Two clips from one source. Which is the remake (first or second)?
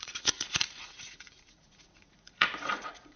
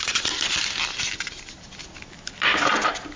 first